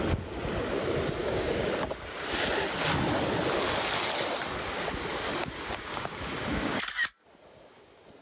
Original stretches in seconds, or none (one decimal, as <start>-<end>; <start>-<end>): 0.0-1.2; 1.7-5.4; 6.8-8.2